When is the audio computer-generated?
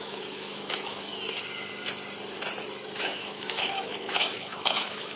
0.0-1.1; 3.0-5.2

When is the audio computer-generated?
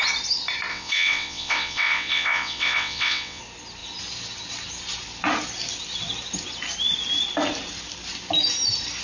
0.7-3.4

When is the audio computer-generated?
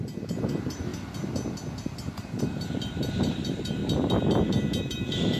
0.0-0.9; 2.1-3.8; 4.8-5.4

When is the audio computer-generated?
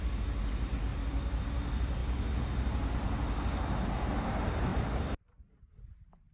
0.9-1.4; 4.7-5.2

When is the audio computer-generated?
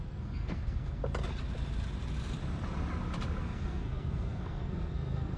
0.0-1.0; 3.4-5.4